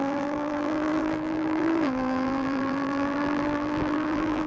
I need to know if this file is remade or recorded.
remade